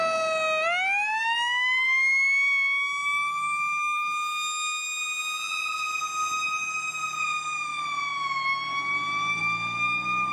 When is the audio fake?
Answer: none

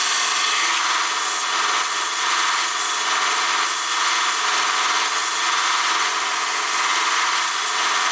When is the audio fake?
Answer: none

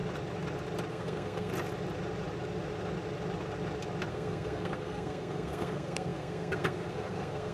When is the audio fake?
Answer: 0.9-1.5 (codec, SNAC); 4.1-7.5